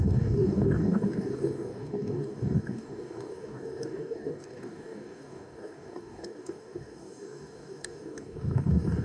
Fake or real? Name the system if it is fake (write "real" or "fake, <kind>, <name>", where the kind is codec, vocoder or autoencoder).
fake, codec, DAC